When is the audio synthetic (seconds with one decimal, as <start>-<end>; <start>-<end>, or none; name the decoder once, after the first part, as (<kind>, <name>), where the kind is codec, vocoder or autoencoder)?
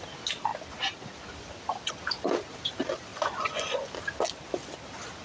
3.1-3.9 (vocoder, Vocos)